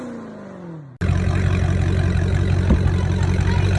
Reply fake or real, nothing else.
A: real